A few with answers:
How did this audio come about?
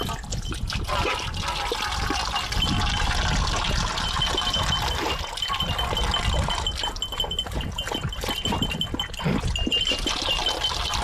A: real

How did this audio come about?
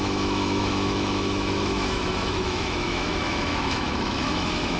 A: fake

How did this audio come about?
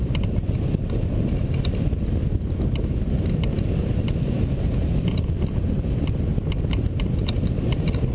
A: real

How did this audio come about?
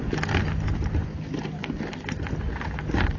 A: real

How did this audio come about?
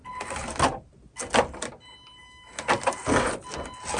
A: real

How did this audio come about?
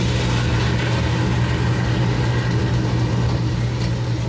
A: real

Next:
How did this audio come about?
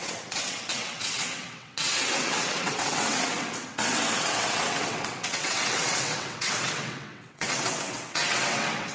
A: fake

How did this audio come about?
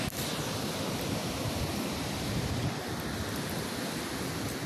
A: real